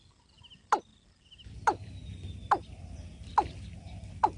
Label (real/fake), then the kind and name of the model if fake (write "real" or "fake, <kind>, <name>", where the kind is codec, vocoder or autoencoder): real